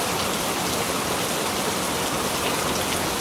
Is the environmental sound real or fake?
real